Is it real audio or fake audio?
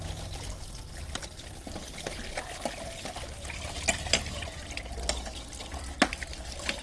real